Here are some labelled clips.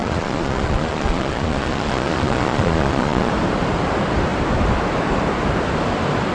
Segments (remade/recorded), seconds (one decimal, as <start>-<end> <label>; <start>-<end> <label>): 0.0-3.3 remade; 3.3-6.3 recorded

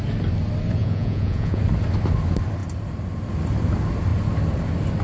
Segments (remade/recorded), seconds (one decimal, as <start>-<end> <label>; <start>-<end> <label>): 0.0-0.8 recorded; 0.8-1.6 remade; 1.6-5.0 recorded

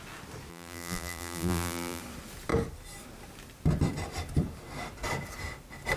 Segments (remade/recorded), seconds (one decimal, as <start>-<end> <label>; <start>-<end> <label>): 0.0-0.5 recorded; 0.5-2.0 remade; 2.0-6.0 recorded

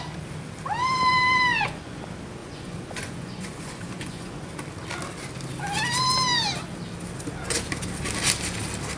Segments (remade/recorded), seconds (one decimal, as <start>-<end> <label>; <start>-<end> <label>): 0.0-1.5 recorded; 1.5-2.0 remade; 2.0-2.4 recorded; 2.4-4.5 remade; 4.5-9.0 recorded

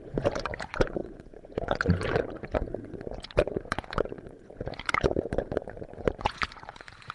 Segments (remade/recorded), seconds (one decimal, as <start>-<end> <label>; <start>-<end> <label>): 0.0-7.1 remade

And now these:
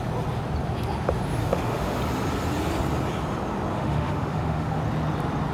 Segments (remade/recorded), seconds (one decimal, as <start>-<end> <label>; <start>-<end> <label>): 0.0-1.4 recorded; 1.4-2.0 remade; 2.0-3.7 recorded; 3.7-4.8 remade; 4.8-5.5 recorded

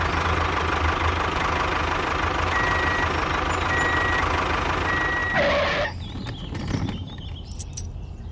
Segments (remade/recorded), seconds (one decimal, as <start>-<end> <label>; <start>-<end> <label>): 0.0-8.3 recorded

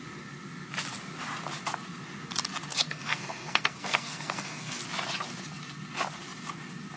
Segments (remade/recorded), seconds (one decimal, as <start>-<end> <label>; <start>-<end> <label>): 0.0-2.7 recorded; 2.7-4.8 remade; 4.8-7.0 recorded